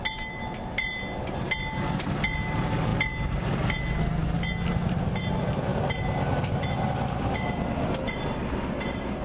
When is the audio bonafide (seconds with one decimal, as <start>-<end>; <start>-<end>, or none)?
0.0-9.2